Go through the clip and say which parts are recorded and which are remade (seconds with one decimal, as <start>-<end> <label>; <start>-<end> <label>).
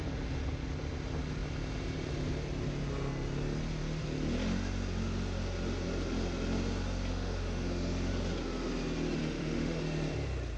0.0-7.1 recorded; 7.1-8.1 remade; 8.1-9.2 recorded; 9.2-9.8 remade; 9.8-10.6 recorded